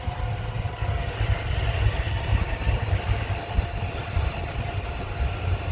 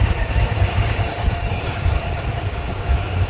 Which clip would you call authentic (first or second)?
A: first